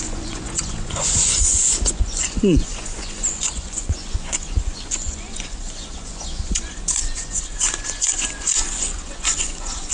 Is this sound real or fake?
fake